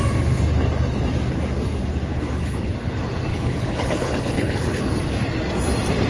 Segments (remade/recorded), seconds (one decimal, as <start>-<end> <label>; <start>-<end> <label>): 0.0-2.1 recorded; 2.1-2.7 remade; 2.7-3.3 recorded; 3.3-4.8 remade; 4.8-6.1 recorded